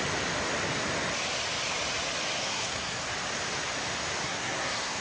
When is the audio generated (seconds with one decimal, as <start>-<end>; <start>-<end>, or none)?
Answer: 2.4-3.0; 4.2-5.0